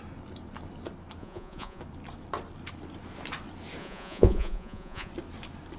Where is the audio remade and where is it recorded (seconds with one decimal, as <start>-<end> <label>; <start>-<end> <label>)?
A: 0.0-1.2 recorded; 1.2-1.8 remade; 1.8-3.8 recorded; 3.8-5.1 remade; 5.1-5.8 recorded